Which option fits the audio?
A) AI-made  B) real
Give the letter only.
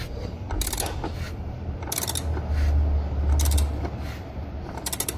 B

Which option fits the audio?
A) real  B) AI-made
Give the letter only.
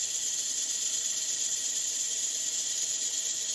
B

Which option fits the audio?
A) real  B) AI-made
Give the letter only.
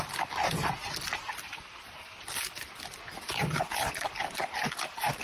A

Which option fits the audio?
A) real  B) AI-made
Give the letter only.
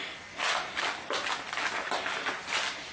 A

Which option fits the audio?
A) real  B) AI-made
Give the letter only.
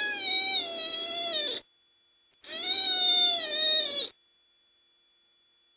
A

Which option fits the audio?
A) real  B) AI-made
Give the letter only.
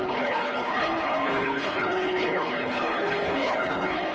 B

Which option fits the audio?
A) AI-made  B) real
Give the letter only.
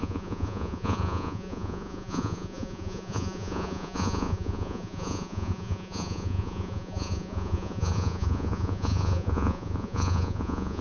A